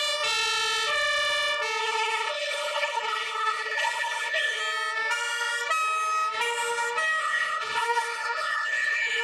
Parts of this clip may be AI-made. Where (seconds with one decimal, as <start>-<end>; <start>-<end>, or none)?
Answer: 1.8-4.6; 7.2-9.2